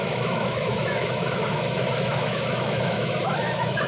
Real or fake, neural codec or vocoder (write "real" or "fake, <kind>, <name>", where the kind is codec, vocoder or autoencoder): fake, autoencoder, DAC-VAE